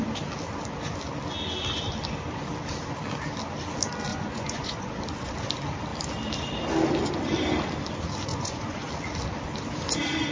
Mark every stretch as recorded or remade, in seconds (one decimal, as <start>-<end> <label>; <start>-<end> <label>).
0.0-4.1 recorded; 4.1-4.9 remade; 4.9-8.3 recorded; 8.3-8.9 remade; 8.9-10.3 recorded